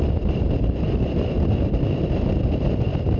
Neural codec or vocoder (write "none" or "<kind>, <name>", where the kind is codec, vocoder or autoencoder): none